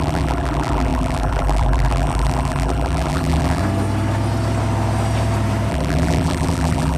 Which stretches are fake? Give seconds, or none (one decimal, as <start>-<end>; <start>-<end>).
0.0-3.6; 5.7-7.0